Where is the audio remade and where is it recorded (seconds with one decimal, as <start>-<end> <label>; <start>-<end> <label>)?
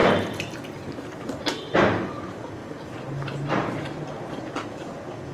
0.0-2.1 remade; 2.1-2.6 recorded; 2.6-4.4 remade; 4.4-5.3 recorded